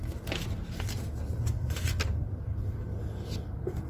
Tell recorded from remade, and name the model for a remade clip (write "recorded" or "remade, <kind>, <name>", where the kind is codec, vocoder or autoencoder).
recorded